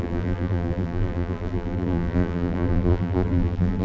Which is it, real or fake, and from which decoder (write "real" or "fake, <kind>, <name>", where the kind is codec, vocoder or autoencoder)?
fake, vocoder, BigVGAN v2